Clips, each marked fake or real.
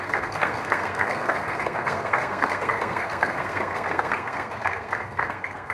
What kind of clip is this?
fake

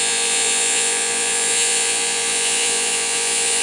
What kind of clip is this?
fake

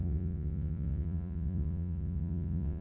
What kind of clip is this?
fake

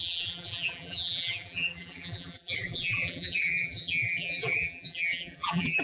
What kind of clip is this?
fake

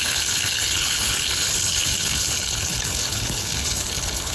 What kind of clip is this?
fake